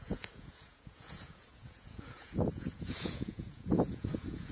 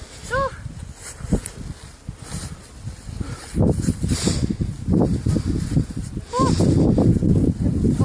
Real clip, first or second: second